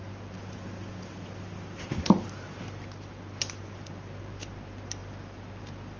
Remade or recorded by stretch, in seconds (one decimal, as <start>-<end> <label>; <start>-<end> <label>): 0.0-6.0 recorded